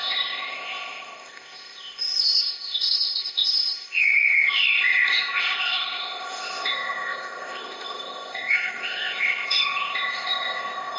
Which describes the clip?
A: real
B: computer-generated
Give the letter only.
B